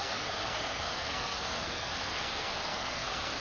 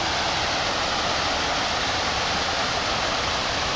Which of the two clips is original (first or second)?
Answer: second